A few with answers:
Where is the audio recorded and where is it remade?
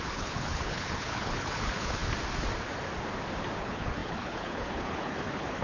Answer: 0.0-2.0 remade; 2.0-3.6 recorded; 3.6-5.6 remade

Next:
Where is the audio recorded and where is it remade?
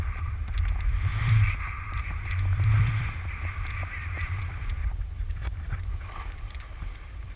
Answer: 0.0-7.4 remade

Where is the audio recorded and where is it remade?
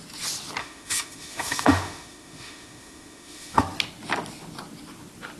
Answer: 0.0-0.6 recorded; 0.6-3.6 remade; 3.6-5.4 recorded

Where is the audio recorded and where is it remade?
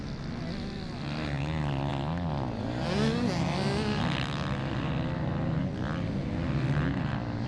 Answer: 0.0-7.5 recorded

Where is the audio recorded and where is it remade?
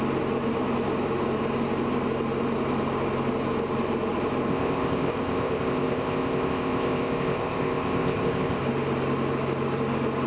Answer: 0.0-4.5 recorded; 4.5-8.6 remade; 8.6-10.3 recorded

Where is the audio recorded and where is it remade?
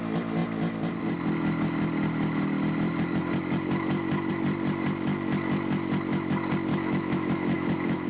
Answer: 0.0-6.7 recorded; 6.7-8.1 remade